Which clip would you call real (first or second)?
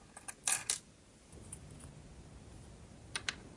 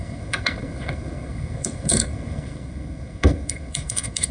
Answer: first